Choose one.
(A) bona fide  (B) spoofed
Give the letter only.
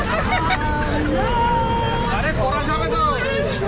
A